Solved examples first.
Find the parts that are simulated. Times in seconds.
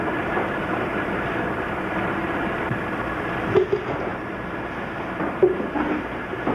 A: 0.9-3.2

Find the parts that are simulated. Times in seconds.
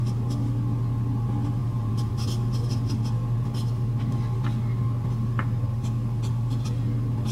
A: 1.6-2.1